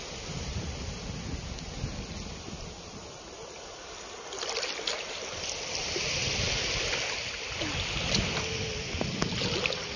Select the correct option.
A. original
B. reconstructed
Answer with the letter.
A